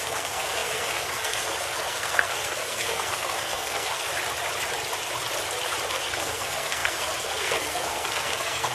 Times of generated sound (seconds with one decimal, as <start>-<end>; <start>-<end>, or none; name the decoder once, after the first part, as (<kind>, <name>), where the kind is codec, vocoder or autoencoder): 0.0-4.1 (codec, SNAC); 5.9-8.7